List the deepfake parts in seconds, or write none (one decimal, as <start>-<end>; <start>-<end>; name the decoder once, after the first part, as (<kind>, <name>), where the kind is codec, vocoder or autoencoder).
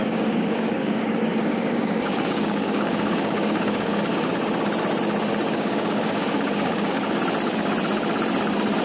0.0-4.3 (codec, DAC); 5.5-7.2